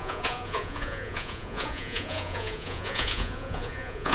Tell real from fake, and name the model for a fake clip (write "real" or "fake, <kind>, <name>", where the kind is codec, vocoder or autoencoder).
fake, vocoder, Vocos